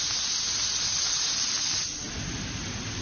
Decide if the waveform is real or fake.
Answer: real